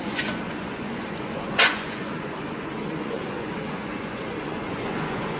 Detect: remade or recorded remade